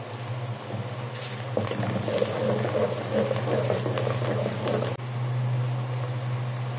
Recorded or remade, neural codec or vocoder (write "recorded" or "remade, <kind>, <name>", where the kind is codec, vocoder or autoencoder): recorded